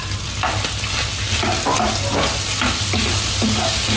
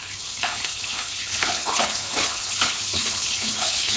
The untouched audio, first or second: first